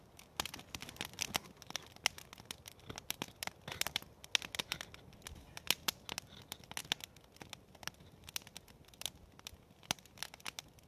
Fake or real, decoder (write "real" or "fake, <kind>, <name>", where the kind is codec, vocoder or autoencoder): real